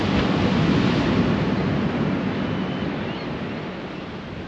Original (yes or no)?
yes